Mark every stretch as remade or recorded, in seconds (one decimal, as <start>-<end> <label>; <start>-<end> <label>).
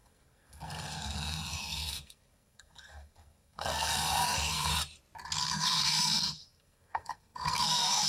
0.0-4.7 remade; 4.7-5.4 recorded; 5.4-8.1 remade